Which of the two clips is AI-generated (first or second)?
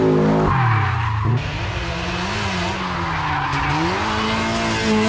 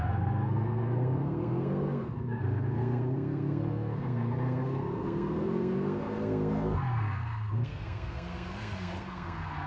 second